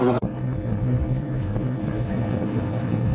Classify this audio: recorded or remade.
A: remade